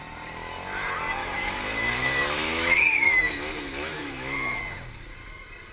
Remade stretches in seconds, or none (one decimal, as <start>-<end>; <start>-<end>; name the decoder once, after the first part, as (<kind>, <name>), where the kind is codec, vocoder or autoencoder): 1.2-4.6 (autoencoder, DAC-VAE)